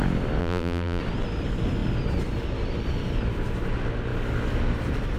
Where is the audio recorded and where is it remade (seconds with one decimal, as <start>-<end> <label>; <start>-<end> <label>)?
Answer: 0.0-0.4 recorded; 0.4-1.0 remade; 1.0-5.2 recorded